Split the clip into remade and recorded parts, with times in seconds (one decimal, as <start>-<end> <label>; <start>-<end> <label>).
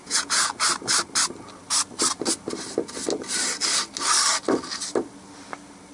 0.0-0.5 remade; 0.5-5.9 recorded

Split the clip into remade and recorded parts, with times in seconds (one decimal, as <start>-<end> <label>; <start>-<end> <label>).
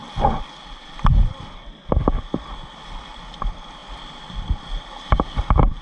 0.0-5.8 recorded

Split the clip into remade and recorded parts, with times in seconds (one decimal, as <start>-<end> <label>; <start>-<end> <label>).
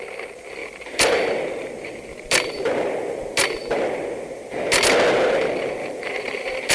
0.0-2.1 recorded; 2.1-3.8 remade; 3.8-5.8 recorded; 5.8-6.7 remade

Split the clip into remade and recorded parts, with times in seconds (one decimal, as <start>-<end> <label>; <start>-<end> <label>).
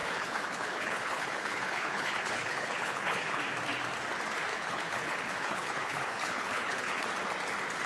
0.0-3.4 remade; 3.4-4.5 recorded; 4.5-7.0 remade; 7.0-7.9 recorded